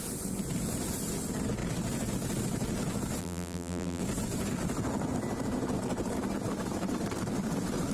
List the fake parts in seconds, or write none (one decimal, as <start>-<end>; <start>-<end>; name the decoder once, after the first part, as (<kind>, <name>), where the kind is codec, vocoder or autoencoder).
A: 3.2-4.0 (vocoder, BigVGAN v2)